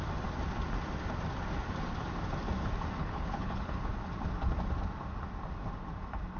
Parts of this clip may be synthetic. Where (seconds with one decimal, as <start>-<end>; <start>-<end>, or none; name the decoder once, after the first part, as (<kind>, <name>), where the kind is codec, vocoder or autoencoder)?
3.0-3.8 (codec, HILCodec)

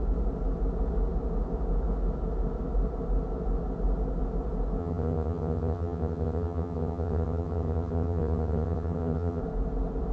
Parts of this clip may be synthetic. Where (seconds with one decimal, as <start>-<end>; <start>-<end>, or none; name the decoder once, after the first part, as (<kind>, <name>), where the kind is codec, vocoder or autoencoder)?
4.8-9.4 (vocoder, HiFi-GAN)

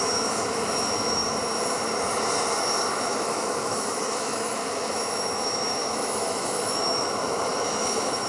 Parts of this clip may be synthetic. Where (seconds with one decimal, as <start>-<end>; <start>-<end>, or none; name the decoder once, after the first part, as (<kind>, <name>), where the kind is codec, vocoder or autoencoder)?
0.0-1.2 (autoencoder, DAC-VAE); 2.9-8.3

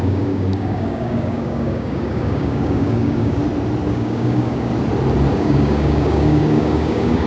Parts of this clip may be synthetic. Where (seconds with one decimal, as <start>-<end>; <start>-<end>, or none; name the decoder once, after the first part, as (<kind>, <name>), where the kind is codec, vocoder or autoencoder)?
0.0-3.4 (codec, DAC); 3.9-4.7; 5.3-7.3

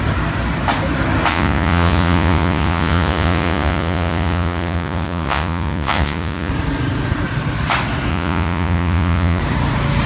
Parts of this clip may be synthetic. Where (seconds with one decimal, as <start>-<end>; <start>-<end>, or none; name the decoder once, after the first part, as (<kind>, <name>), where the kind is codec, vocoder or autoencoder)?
1.3-6.5 (vocoder, Vocos); 8.1-9.4

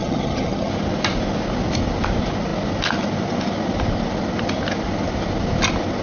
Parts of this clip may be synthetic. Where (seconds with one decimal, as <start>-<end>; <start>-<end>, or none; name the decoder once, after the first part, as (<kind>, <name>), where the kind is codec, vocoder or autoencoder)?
0.0-0.7 (vocoder, HiFi-GAN)